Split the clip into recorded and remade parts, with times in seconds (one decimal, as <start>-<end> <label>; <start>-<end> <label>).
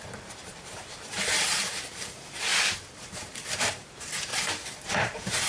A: 0.0-2.5 remade; 2.5-3.0 recorded; 3.0-4.3 remade; 4.3-4.9 recorded; 4.9-5.5 remade